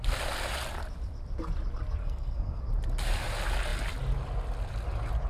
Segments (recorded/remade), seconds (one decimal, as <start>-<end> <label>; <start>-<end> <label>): 0.0-2.0 recorded; 2.0-2.6 remade; 2.6-5.3 recorded